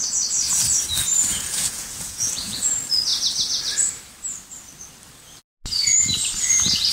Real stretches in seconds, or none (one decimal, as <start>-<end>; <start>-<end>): 0.0-1.3; 2.7-6.9